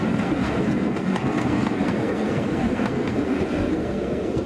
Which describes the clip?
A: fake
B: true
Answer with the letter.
A